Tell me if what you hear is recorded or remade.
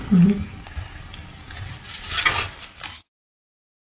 recorded